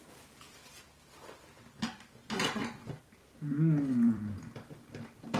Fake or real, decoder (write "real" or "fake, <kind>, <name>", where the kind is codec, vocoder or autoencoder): fake, vocoder, BigVGAN v2